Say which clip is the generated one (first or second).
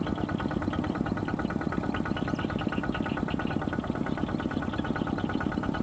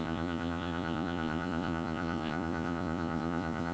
second